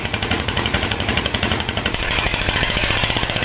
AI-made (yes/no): yes